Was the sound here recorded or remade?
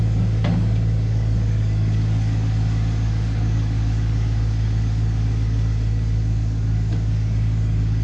remade